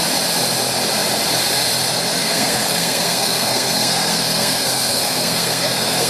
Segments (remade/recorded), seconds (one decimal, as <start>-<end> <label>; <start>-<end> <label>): 0.0-2.2 recorded; 2.2-6.1 remade